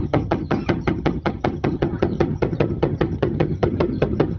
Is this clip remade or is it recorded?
remade